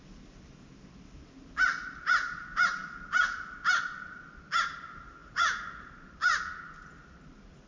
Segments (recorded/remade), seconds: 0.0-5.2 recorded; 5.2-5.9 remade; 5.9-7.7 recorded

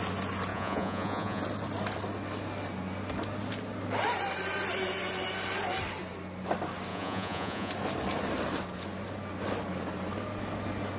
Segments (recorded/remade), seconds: 0.0-0.5 recorded; 0.5-1.4 remade; 1.4-6.9 recorded; 6.9-7.7 remade; 7.7-11.0 recorded

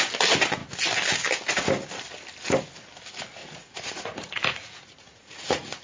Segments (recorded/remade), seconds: 0.0-3.4 recorded; 3.4-5.8 remade

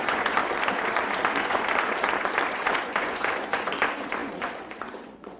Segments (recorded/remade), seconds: 0.0-0.4 remade; 0.4-1.4 recorded; 1.4-1.9 remade; 1.9-2.5 recorded; 2.5-5.4 remade

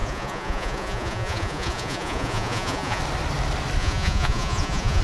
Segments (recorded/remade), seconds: 0.0-3.0 remade; 3.0-3.8 recorded; 3.8-5.0 remade

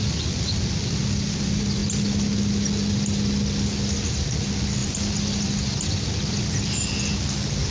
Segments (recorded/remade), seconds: 0.0-7.7 recorded

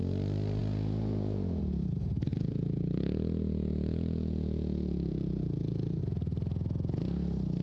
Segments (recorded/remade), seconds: 0.0-0.6 recorded; 0.6-1.6 remade; 1.6-2.3 recorded; 2.3-6.0 remade; 6.0-7.6 recorded

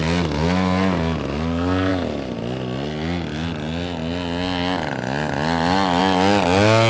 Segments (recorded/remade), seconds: 0.0-6.9 recorded